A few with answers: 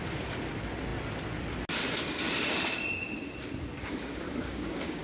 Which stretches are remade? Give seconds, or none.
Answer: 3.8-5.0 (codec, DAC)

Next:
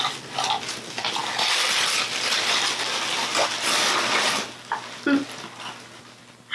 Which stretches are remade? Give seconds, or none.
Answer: none

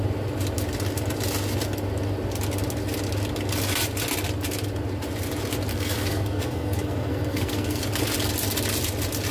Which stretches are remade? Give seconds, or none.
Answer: 5.7-7.8 (codec, SNAC)